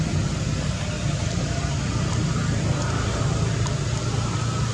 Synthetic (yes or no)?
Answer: no